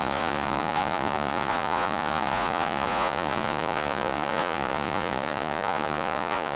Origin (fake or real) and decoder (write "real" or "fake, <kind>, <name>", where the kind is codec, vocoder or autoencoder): fake, vocoder, Vocos